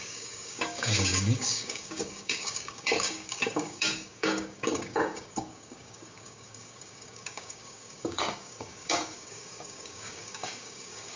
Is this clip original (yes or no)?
no